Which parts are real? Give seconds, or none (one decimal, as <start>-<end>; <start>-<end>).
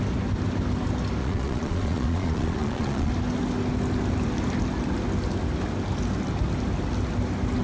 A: 0.0-1.2; 3.1-7.6